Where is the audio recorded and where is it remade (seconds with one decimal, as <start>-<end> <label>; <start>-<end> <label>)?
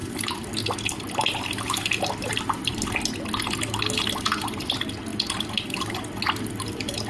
0.0-7.1 recorded